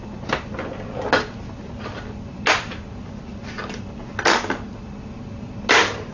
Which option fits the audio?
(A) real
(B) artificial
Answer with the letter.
A